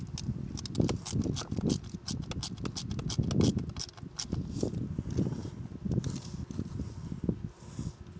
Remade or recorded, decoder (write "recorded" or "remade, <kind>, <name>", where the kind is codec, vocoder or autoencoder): recorded